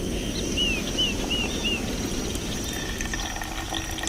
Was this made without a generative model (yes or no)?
yes